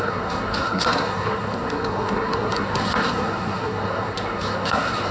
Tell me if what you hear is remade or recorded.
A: remade